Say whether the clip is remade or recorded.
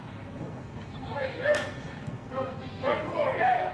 remade